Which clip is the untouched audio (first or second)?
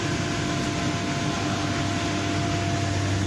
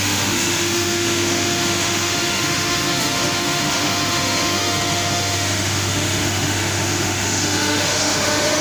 first